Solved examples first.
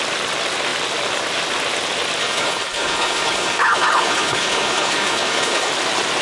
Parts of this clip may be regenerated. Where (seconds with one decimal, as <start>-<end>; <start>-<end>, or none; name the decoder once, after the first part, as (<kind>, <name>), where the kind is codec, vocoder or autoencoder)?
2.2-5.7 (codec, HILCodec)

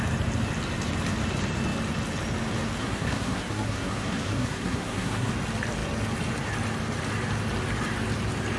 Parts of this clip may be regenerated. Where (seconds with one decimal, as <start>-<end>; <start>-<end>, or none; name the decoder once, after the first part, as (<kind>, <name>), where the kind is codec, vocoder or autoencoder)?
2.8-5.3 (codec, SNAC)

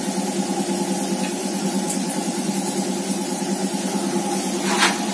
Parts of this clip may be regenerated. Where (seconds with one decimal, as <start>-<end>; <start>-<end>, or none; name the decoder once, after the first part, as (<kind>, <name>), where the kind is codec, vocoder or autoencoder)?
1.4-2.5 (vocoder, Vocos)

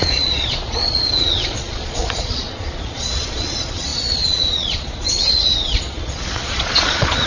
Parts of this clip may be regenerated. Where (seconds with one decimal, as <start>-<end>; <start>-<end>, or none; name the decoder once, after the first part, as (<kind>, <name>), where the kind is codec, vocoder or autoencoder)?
0.0-7.3 (vocoder, Vocos)

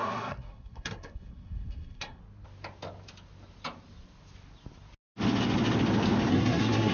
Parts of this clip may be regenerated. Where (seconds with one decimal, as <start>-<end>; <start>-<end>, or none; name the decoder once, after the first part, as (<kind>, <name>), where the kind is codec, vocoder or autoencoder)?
0.0-2.2 (codec, SNAC); 6.3-6.9